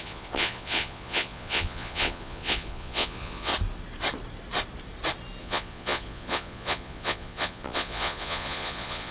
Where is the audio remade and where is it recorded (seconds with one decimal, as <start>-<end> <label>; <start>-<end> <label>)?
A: 0.0-3.5 remade; 3.5-5.4 recorded; 5.4-9.1 remade